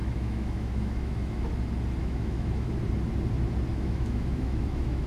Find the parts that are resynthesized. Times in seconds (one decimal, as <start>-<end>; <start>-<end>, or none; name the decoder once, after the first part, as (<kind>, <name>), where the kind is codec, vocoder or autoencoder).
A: 0.0-1.5 (autoencoder, DAC-VAE); 2.0-2.7; 3.7-5.1